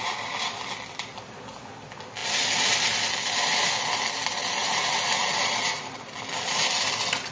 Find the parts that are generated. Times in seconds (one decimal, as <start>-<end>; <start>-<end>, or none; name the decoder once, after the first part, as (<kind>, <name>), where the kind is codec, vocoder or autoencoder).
none